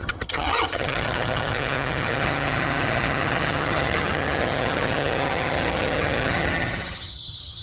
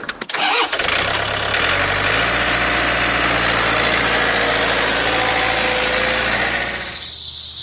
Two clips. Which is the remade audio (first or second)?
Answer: first